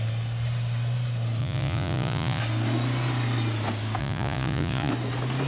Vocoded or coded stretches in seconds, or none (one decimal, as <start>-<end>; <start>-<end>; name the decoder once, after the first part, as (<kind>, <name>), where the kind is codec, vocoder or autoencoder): 1.4-2.4 (vocoder, Vocos); 4.0-4.9